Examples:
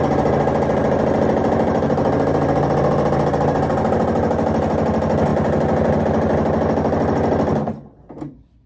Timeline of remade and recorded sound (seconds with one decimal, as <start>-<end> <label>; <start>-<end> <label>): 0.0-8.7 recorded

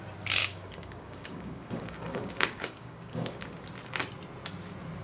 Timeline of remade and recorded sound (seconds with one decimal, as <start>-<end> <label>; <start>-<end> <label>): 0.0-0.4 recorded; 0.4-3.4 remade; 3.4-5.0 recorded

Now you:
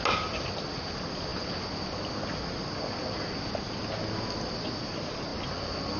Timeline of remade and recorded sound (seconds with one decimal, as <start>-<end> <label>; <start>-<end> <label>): 0.0-6.0 recorded

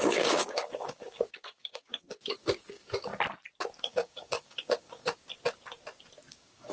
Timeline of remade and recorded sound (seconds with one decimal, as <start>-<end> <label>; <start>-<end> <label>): 0.0-3.1 remade; 3.1-3.8 recorded; 3.8-5.2 remade; 5.2-6.3 recorded; 6.3-6.7 remade